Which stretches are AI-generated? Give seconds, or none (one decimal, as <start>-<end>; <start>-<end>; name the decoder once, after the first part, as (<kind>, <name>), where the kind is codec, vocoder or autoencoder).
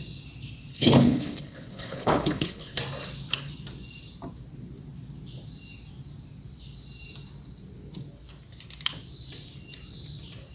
0.7-2.8 (codec, HILCodec)